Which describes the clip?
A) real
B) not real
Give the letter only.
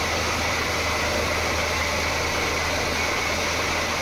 A